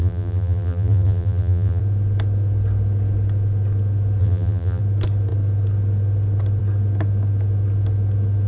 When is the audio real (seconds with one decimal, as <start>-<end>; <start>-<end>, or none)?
1.8-4.2; 4.8-8.5